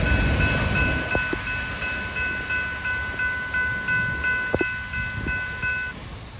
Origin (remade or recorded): recorded